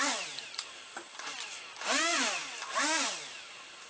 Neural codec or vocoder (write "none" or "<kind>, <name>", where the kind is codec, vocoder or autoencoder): none